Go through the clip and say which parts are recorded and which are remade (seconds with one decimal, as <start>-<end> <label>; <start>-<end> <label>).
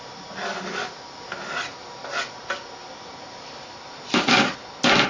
0.0-5.1 recorded